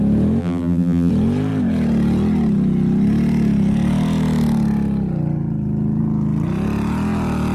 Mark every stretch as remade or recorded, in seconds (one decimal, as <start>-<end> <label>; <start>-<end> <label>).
0.0-0.4 recorded; 0.4-1.1 remade; 1.1-7.5 recorded